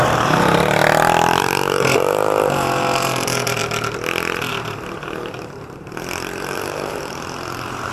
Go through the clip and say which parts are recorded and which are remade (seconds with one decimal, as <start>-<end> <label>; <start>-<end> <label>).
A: 0.0-0.8 remade; 0.8-1.4 recorded; 1.4-3.6 remade; 3.6-4.5 recorded; 4.5-7.9 remade